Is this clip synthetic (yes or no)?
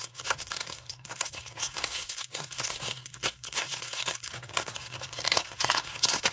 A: yes